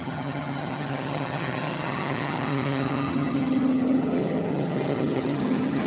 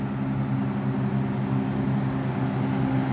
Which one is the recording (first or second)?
second